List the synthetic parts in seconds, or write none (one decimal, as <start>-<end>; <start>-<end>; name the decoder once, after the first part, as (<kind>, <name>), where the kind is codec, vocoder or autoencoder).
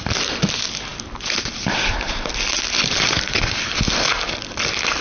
none